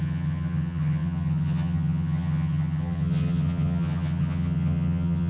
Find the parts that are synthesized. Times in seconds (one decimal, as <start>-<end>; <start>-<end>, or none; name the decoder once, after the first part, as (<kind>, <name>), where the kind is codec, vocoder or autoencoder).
0.0-5.3 (vocoder, HiFi-GAN)